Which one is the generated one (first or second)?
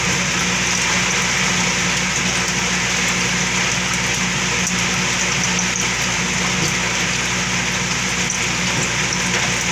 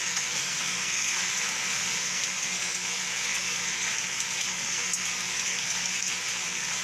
second